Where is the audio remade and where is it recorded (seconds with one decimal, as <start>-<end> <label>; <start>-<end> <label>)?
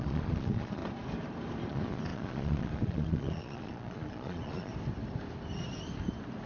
0.0-0.8 remade; 0.8-1.7 recorded; 1.7-4.7 remade; 4.7-6.5 recorded